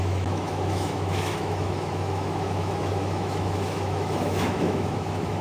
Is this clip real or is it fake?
fake